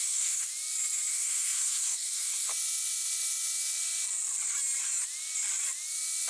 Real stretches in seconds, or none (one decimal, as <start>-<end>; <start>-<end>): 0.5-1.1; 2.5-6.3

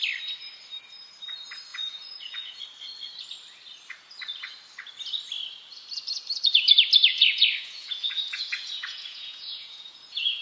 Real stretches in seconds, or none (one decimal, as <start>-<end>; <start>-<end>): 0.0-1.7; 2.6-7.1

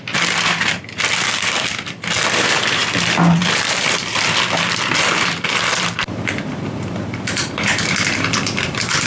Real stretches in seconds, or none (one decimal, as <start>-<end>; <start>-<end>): none

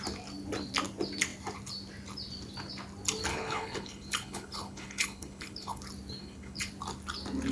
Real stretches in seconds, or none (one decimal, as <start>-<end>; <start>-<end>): 0.0-3.3; 5.8-6.2; 6.7-7.5

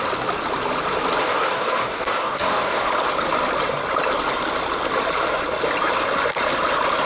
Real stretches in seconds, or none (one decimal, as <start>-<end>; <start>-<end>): 0.0-1.2; 2.9-7.1

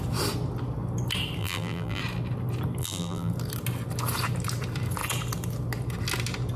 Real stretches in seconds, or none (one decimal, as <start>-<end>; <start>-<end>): 0.0-1.4; 2.0-2.8; 3.3-6.6

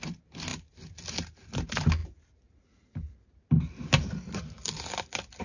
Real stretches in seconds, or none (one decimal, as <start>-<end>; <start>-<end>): 0.0-5.4